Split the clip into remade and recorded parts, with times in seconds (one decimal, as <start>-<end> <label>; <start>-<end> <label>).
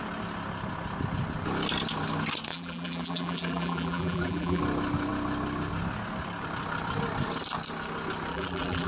0.0-2.5 recorded; 2.5-4.6 remade; 4.6-8.3 recorded; 8.3-8.9 remade